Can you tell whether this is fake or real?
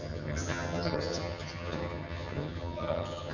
fake